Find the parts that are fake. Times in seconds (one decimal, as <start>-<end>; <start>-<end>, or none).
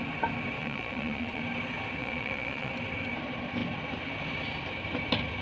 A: 0.6-1.4; 2.0-2.7